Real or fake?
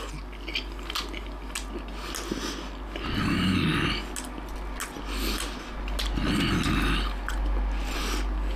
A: real